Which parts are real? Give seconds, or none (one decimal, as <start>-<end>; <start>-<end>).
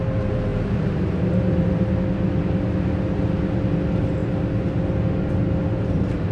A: 0.0-6.3